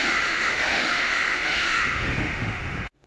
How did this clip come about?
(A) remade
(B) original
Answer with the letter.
A